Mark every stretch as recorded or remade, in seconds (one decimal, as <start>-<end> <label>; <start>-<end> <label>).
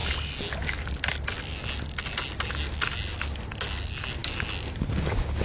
0.0-5.4 recorded